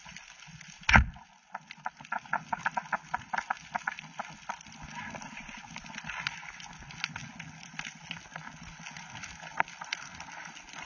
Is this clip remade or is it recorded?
recorded